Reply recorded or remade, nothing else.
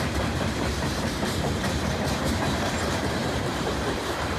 remade